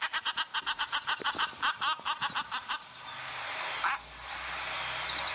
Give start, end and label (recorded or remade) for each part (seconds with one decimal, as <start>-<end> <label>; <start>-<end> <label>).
0.0-0.5 recorded; 0.5-1.8 remade; 1.8-5.3 recorded